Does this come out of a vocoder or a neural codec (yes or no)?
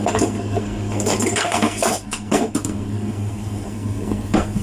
yes